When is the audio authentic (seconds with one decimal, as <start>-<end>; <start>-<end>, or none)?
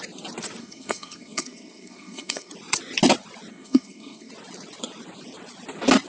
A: 0.0-0.6; 2.5-3.5; 4.3-6.1